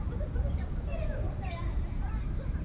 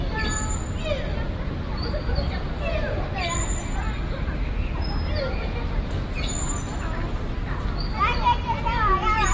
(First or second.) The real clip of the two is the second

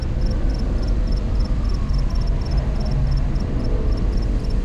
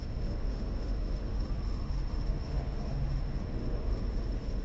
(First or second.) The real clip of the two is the first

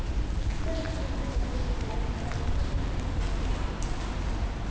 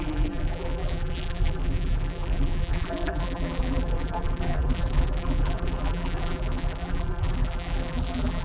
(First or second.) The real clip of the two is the first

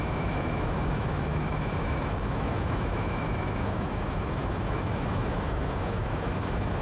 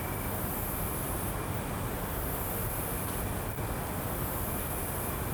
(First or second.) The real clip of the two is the second